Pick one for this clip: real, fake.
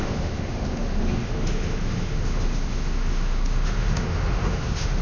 fake